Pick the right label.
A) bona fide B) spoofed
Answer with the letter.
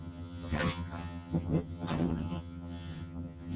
B